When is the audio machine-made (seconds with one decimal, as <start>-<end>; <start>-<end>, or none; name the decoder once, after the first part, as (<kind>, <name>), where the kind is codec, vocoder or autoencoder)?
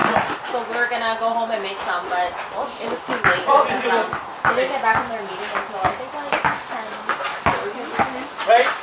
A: none